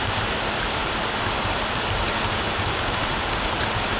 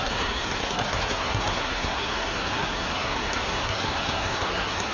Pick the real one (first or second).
first